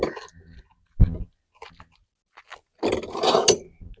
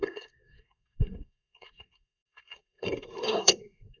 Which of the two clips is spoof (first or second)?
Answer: second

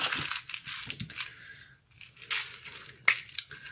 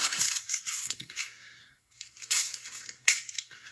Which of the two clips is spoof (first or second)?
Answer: second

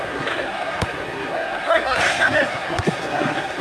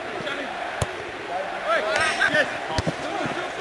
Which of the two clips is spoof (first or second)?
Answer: first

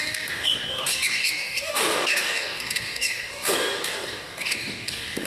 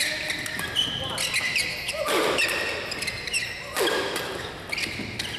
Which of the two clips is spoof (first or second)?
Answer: first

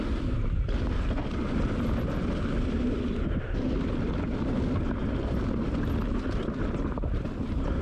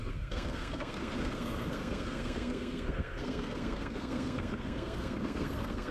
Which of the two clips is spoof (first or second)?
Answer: second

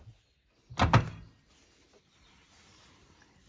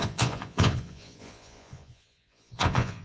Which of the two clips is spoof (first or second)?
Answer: second